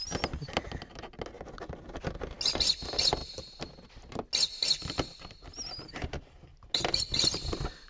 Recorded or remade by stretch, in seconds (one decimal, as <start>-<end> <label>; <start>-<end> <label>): 0.0-3.2 recorded; 3.2-4.1 remade; 4.1-4.6 recorded; 4.6-6.1 remade; 6.1-7.9 recorded